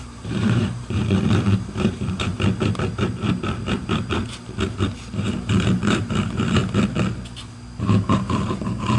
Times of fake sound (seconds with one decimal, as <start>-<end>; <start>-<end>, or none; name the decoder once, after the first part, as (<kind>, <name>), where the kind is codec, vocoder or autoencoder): 0.0-2.3 (vocoder, BigVGAN v2); 3.7-4.2; 4.9-6.6; 7.8-9.0